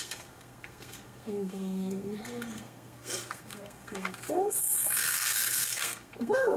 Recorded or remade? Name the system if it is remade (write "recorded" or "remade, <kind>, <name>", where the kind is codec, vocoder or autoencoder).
remade, codec, SNAC